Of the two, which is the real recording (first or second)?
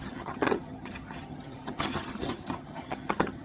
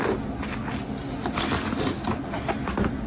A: second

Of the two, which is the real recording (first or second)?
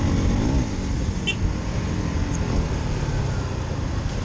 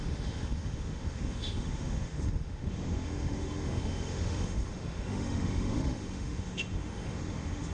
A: first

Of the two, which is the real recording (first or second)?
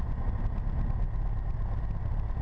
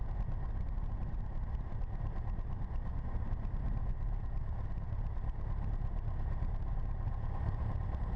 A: first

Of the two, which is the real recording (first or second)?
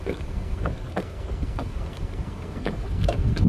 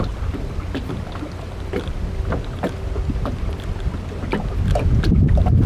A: second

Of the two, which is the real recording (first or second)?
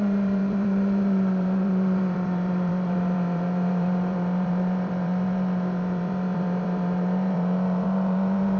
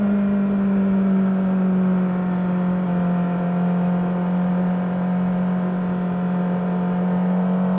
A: second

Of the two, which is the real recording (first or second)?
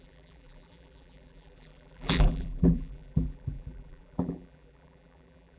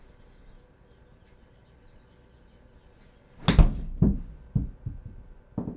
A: second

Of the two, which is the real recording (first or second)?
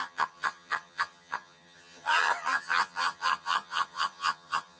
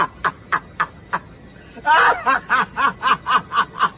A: second